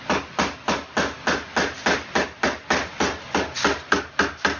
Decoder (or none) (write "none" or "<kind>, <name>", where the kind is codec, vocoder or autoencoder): none